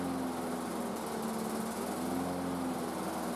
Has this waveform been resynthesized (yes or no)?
no